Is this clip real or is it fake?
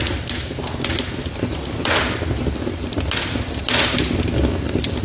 real